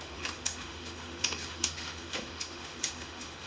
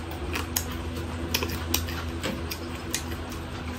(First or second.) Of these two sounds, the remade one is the first